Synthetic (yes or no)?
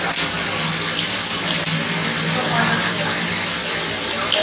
no